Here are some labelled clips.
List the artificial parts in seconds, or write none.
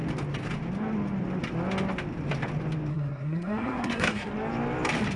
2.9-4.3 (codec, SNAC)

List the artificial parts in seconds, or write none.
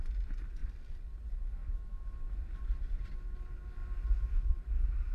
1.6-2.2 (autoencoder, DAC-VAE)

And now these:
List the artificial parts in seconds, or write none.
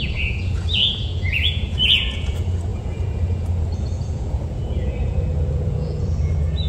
0.0-6.7 (vocoder, Vocos)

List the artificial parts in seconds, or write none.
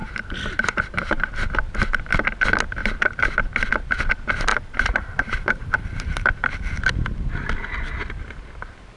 0.0-1.3 (vocoder, BigVGAN v2); 2.8-3.5; 4.5-6.3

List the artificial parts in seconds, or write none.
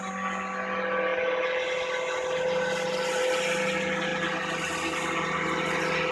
none